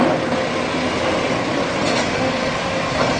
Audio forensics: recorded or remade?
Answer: recorded